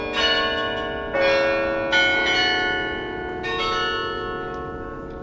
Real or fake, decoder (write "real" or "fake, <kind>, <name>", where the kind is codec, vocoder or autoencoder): real